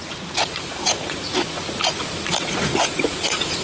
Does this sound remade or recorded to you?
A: remade